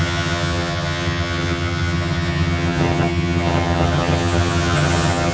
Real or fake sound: fake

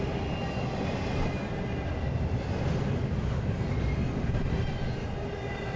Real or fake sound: real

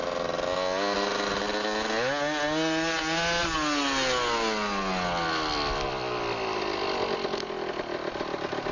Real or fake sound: real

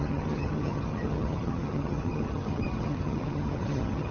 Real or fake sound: fake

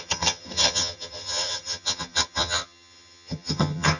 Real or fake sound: fake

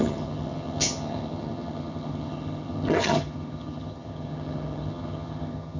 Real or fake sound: fake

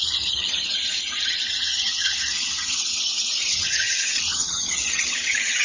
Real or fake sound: fake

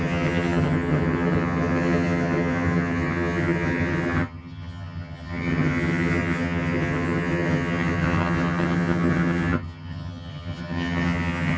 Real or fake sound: fake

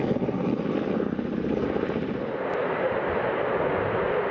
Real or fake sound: real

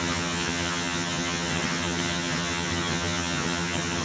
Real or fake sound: fake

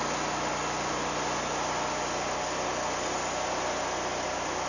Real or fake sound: real